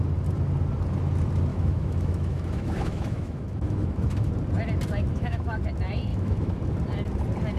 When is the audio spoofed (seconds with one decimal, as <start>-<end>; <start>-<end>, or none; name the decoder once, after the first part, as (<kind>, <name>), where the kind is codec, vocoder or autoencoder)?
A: 1.5-4.3 (autoencoder, DAC-VAE); 5.1-5.6; 6.1-6.6

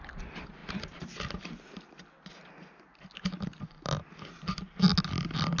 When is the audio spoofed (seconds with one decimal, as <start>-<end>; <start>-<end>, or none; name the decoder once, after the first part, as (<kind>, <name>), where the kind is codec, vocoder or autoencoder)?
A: none